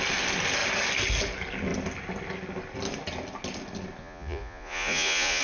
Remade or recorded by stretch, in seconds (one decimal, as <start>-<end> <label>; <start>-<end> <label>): 0.0-4.0 recorded; 4.0-5.4 remade